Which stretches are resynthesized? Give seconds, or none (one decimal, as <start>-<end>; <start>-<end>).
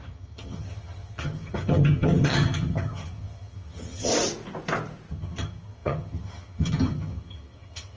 0.0-4.1; 5.1-8.0